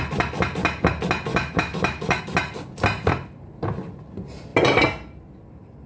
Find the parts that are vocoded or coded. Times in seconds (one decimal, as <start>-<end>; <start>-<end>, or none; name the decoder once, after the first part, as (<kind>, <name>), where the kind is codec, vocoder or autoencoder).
1.3-2.2 (autoencoder, DAC-VAE)